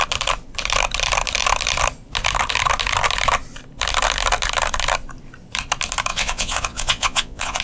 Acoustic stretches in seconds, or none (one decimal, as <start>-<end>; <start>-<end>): 0.0-6.1